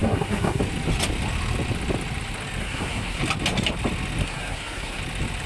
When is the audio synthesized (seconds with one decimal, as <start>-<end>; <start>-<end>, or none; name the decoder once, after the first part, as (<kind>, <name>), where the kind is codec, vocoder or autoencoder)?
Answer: 0.0-0.6 (codec, SNAC); 2.6-3.2; 4.2-5.0